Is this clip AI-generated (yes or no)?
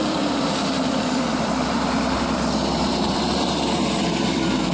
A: yes